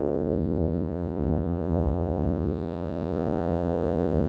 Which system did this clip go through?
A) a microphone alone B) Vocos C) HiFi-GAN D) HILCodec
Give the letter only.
B